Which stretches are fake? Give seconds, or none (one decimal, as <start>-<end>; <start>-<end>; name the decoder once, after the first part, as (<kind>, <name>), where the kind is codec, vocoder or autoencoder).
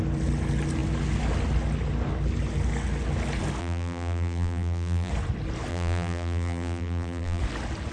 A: 3.6-5.1 (vocoder, BigVGAN v2); 5.7-7.4